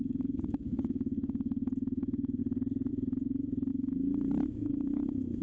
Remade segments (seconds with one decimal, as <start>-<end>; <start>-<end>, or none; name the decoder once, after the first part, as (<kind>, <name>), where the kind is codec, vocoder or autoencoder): 0.0-2.4 (autoencoder, DAC-VAE); 2.9-5.4